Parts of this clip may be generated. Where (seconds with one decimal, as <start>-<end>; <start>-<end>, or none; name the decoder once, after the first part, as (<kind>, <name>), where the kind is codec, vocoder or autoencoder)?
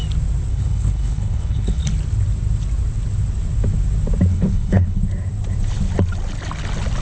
0.5-1.8 (codec, HILCodec); 4.3-5.0